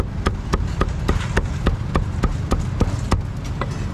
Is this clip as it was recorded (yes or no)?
yes